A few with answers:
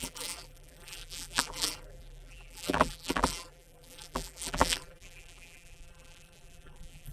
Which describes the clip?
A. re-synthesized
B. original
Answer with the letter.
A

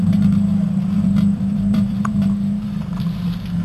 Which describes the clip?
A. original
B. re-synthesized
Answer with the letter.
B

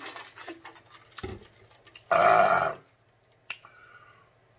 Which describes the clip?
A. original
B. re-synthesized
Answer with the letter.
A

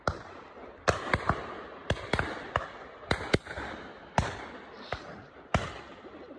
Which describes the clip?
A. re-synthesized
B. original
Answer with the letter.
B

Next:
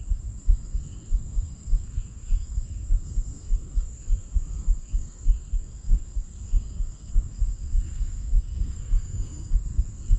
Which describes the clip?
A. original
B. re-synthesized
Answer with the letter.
B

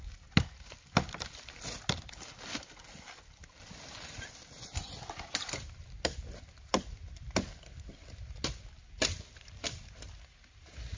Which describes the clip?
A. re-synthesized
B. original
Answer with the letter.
B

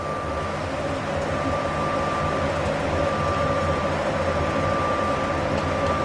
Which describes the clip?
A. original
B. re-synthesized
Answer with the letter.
A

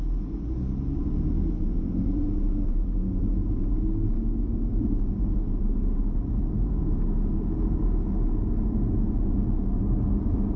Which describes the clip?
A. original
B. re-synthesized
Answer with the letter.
A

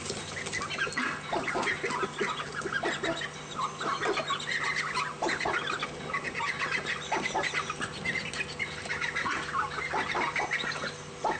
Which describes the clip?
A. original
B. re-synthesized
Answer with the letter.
A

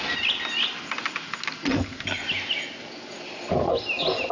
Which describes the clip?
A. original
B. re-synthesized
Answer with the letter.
A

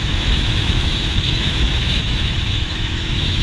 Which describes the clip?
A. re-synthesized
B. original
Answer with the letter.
A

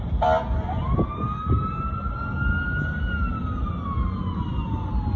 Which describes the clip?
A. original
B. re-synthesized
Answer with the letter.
A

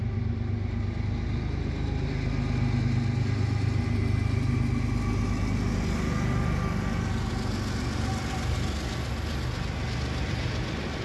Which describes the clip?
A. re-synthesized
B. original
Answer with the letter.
B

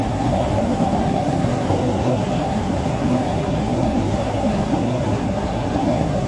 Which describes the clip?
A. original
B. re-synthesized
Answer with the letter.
B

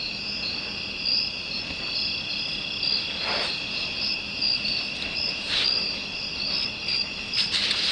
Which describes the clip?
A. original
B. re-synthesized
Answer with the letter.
A